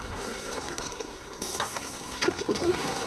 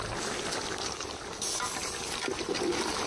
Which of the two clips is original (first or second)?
second